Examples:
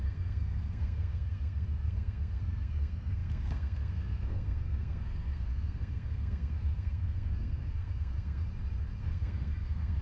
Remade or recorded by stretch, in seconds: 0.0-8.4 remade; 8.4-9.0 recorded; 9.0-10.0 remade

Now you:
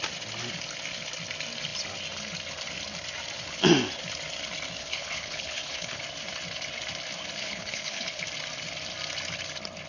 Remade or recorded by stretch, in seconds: 0.0-4.8 recorded; 4.8-6.0 remade; 6.0-7.4 recorded; 7.4-8.2 remade; 8.2-9.9 recorded

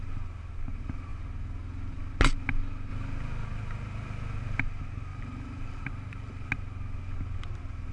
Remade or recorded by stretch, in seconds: 0.0-5.1 recorded; 5.1-6.5 remade; 6.5-7.9 recorded

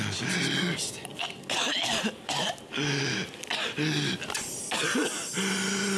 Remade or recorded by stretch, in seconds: 0.0-6.0 recorded

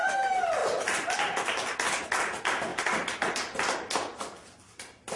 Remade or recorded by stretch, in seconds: 0.0-0.6 recorded; 0.6-1.5 remade; 1.5-5.2 recorded